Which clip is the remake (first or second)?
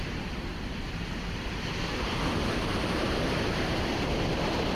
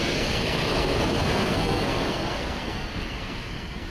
second